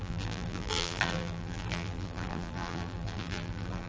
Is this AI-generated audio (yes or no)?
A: yes